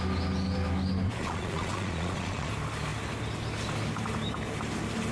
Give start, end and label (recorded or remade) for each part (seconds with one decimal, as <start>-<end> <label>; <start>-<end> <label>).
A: 0.0-1.2 recorded; 1.2-2.5 remade; 2.5-5.1 recorded